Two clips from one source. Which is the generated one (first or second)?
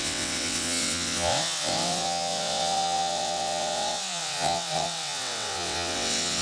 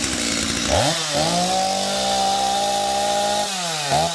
first